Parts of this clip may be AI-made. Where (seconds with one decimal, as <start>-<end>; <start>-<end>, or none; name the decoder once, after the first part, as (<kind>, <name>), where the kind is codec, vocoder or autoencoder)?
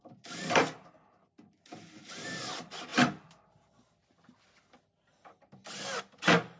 none